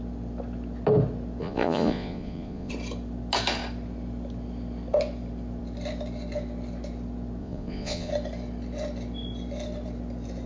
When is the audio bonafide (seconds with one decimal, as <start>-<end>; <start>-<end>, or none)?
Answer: 0.0-1.4; 2.7-7.4; 8.1-10.5